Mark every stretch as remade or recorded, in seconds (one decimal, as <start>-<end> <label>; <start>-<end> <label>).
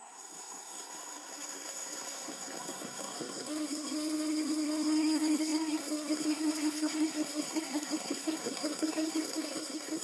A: 0.0-10.0 remade